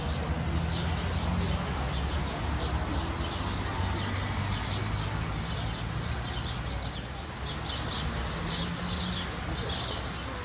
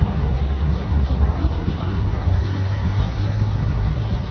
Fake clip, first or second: second